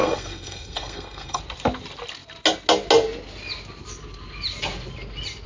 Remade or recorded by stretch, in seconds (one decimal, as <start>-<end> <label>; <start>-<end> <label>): 0.0-1.4 remade; 1.4-5.5 recorded